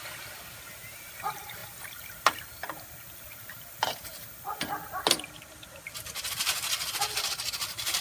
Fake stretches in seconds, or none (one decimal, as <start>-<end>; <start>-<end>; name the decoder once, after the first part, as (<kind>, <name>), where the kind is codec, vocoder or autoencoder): 1.6-6.3 (vocoder, BigVGAN v2)